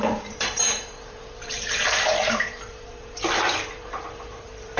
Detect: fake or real fake